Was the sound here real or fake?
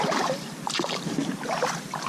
real